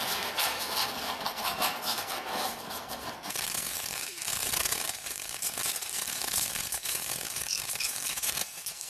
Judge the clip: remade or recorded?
remade